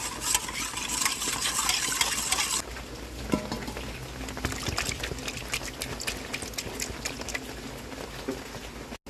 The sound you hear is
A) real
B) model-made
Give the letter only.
A